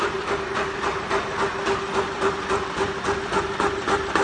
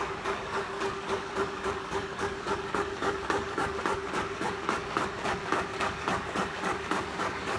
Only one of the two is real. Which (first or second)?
first